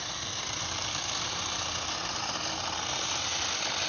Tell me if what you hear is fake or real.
real